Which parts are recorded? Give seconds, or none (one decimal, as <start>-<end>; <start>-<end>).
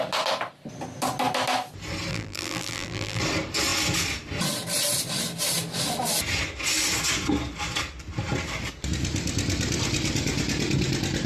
0.0-2.1; 3.2-11.3